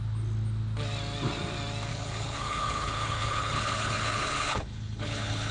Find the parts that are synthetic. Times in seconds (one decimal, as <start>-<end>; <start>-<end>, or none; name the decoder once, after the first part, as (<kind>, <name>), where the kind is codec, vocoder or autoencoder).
1.9-5.5 (codec, HILCodec)